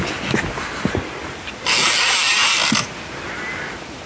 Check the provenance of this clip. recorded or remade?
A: recorded